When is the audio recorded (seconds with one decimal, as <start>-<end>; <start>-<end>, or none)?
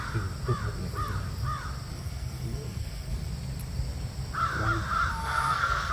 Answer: 0.0-1.9; 3.3-5.2